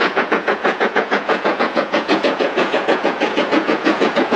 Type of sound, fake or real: fake